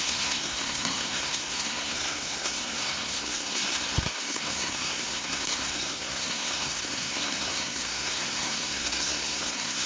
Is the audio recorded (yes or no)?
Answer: no